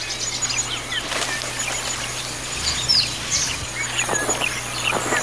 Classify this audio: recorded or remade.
recorded